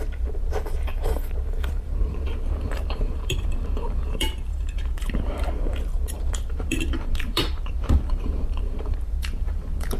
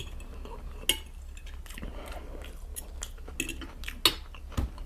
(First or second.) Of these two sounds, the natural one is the second